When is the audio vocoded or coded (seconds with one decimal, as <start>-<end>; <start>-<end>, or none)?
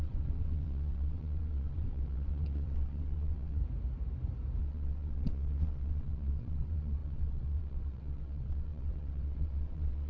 0.0-3.6; 4.6-10.1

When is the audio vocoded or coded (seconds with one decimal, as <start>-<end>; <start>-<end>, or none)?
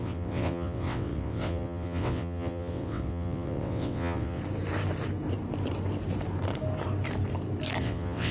0.0-4.4; 7.8-8.3